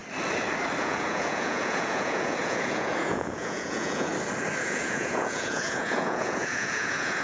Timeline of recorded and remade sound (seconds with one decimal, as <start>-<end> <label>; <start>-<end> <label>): 0.0-0.8 recorded; 0.8-4.1 remade; 4.1-4.6 recorded; 4.6-7.2 remade